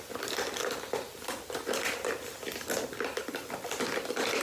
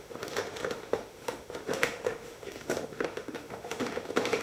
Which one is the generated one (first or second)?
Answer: second